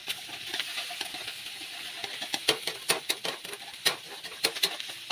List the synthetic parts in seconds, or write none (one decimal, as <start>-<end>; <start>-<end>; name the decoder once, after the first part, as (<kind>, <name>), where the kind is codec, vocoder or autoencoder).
none